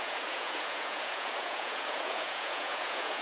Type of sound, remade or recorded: remade